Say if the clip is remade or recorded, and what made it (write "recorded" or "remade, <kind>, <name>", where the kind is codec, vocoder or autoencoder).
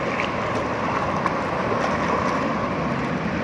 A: recorded